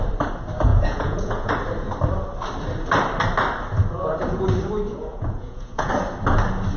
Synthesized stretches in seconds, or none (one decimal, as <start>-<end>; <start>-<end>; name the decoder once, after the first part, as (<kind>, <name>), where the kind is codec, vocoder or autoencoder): 0.7-1.5 (vocoder, Vocos); 5.1-5.9